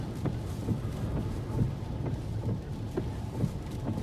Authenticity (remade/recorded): recorded